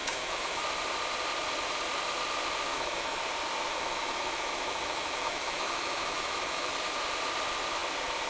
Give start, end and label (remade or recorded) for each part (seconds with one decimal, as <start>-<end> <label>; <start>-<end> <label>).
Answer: 0.0-0.6 remade; 0.6-2.7 recorded; 2.7-3.2 remade; 3.2-3.7 recorded; 3.7-6.7 remade; 6.7-8.3 recorded